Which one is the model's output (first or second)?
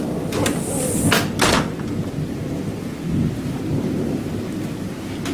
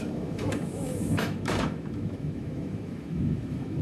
second